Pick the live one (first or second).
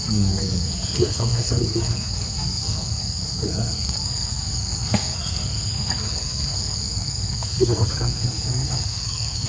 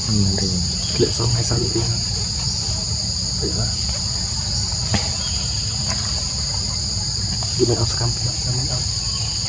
second